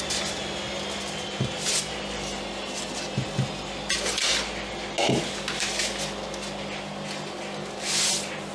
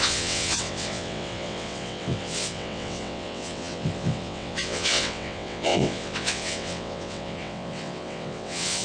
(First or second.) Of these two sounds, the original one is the first